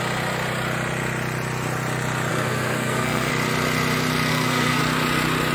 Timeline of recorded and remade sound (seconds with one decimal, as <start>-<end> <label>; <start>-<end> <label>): 0.0-2.3 recorded; 2.3-3.3 remade; 3.3-4.3 recorded; 4.3-4.8 remade; 4.8-5.5 recorded